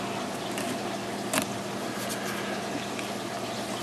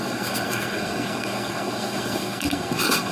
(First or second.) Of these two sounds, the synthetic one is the second